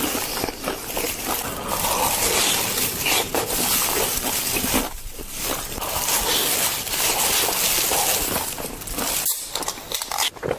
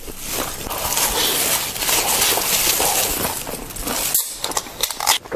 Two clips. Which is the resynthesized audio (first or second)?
first